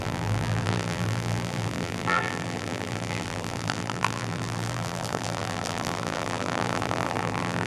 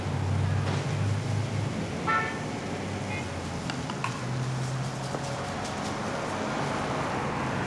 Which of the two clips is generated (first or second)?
first